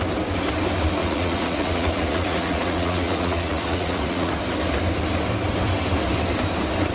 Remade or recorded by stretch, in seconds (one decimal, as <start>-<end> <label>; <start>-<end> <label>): 0.0-1.0 recorded; 1.0-4.4 remade; 4.4-6.9 recorded